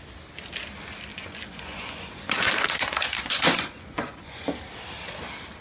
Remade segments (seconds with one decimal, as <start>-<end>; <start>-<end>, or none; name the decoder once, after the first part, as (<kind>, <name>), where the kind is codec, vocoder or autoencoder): 1.1-4.5 (vocoder, Vocos)